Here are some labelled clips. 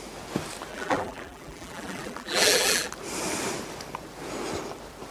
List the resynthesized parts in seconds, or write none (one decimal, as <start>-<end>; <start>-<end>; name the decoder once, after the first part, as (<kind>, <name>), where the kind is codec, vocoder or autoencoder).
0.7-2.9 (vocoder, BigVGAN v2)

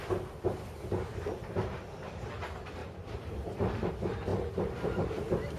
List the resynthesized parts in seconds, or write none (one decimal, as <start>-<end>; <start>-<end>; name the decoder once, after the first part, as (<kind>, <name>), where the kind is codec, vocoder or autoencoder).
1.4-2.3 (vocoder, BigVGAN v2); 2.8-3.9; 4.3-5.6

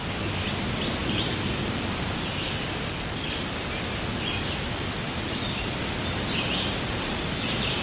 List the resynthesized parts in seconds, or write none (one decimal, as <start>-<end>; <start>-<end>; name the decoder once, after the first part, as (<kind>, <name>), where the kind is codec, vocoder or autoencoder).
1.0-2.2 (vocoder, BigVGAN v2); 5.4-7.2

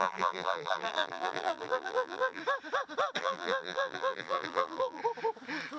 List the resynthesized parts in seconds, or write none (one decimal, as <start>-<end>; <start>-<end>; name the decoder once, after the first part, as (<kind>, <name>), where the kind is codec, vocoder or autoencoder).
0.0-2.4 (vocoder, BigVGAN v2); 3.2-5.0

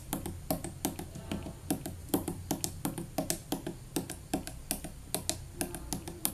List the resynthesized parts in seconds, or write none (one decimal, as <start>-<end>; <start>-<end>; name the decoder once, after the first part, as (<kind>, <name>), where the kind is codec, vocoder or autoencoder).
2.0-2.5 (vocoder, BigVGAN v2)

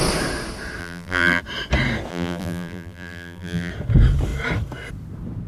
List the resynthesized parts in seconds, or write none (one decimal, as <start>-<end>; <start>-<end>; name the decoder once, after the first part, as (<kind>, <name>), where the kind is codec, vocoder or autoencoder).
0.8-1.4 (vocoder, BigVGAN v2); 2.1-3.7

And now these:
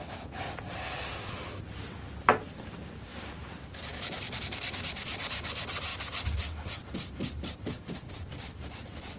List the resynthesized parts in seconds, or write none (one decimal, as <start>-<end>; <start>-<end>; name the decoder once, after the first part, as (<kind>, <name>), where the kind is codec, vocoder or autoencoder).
3.1-4.0 (vocoder, BigVGAN v2)